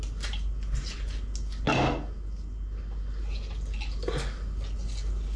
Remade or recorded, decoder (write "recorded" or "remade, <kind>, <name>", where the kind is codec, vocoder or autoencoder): recorded